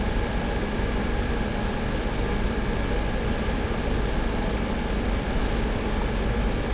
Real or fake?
real